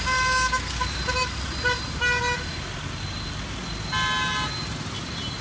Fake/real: real